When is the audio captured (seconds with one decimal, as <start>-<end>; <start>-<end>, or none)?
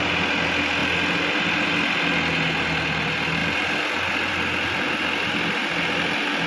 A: 0.0-6.5